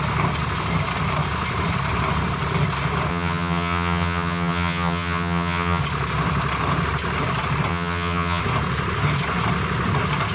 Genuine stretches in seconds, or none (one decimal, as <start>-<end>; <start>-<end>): 0.0-3.1; 5.8-7.7; 8.4-10.3